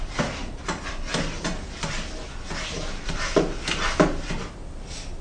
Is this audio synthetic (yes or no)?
no